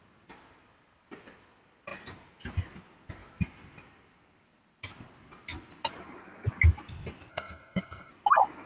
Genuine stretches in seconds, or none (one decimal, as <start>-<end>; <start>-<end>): 0.0-7.3; 8.1-8.7